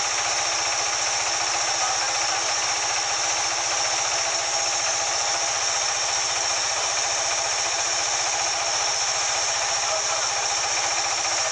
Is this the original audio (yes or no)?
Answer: yes